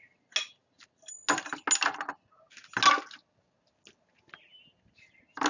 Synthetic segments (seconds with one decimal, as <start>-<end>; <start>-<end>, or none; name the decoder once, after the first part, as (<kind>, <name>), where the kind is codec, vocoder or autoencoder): none